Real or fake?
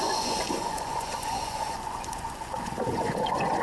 fake